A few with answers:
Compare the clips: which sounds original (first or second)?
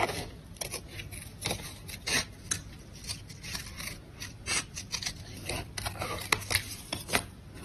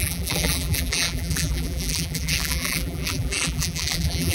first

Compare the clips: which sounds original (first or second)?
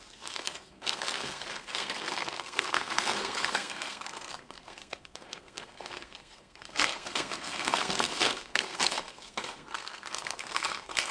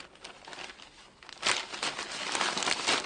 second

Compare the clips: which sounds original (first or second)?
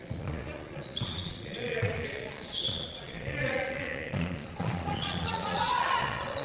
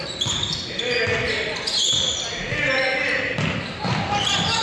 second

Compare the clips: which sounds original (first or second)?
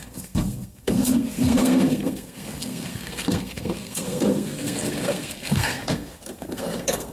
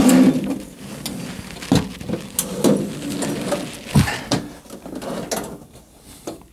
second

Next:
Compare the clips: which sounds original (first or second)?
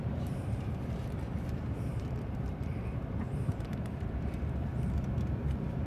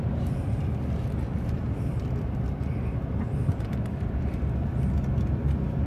second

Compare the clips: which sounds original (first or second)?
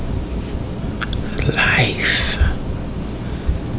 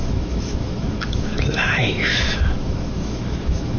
first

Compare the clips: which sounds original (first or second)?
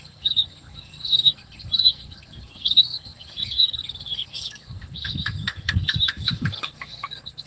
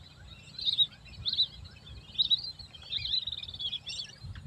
second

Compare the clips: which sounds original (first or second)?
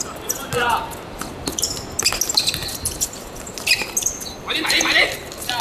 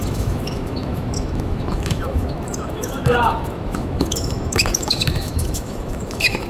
first